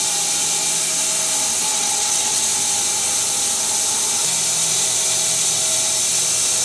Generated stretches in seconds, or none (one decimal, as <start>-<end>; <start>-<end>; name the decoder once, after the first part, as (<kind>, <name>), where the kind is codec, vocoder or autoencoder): 1.7-2.4 (vocoder, WaveNeXt)